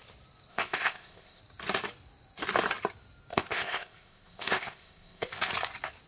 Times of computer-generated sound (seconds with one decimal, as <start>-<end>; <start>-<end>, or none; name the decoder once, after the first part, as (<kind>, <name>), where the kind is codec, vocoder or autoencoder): 0.5-1.4 (codec, ZipCodec); 3.3-5.5